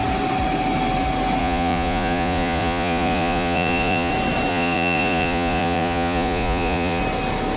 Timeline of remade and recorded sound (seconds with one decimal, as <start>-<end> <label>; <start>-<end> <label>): 0.0-1.4 recorded; 1.4-4.1 remade; 4.1-4.5 recorded; 4.5-7.0 remade; 7.0-7.6 recorded